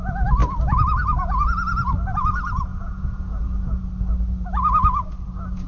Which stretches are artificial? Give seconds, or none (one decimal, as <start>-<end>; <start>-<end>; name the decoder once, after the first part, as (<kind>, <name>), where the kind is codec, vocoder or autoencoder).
2.7-3.8 (vocoder, Vocos)